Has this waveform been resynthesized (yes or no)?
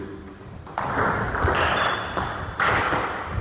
no